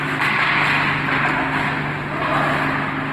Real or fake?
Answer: real